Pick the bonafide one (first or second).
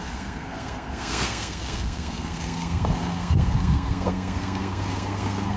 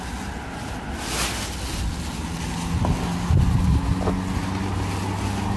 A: second